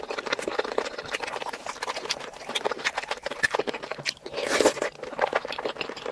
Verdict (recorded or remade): recorded